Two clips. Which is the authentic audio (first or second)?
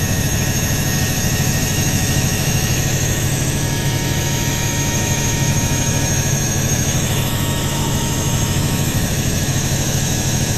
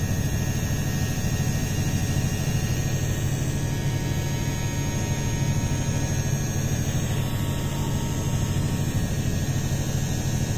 second